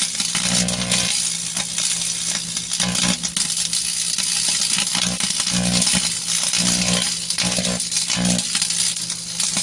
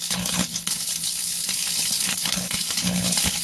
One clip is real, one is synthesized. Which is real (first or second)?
first